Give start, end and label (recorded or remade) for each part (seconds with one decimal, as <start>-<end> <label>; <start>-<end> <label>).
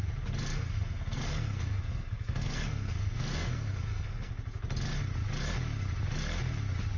0.0-0.5 recorded; 0.5-4.3 remade; 4.3-7.0 recorded